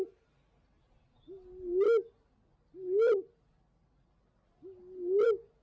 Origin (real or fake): real